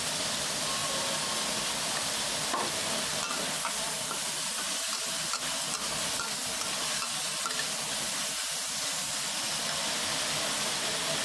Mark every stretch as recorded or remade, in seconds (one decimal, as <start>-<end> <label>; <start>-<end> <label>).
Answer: 0.0-11.2 recorded